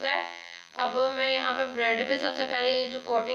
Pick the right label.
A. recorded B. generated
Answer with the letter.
B